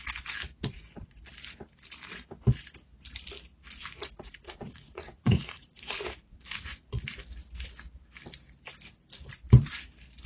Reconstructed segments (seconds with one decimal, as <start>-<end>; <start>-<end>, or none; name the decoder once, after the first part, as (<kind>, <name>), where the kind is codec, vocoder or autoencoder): 0.6-1.2 (vocoder, Vocos); 3.8-7.0